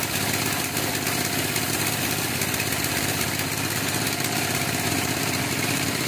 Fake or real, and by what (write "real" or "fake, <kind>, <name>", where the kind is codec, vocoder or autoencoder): fake, vocoder, BigVGAN v2